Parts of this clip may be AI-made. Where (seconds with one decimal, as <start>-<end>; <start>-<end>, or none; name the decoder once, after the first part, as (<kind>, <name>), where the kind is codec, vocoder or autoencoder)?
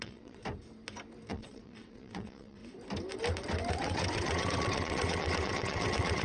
0.0-0.4 (vocoder, WaveNeXt); 1.3-2.6; 3.7-6.2